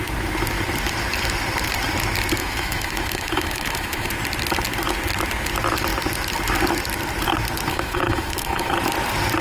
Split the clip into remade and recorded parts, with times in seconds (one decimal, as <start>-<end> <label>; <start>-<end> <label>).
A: 0.0-2.4 recorded; 2.4-4.1 remade; 4.1-7.7 recorded; 7.7-8.7 remade; 8.7-9.4 recorded